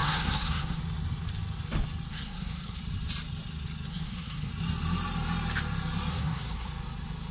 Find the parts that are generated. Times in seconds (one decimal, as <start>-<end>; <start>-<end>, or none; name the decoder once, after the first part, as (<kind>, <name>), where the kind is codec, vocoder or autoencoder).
0.0-0.8 (codec, SNAC); 2.1-2.8; 3.9-4.5; 6.1-6.7